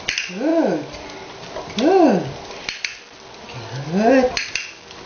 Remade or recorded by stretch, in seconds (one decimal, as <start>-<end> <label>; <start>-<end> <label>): 0.0-5.1 recorded